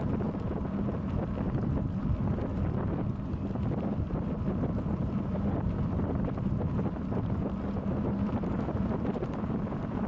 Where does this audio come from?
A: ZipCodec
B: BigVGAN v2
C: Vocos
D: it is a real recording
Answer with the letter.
D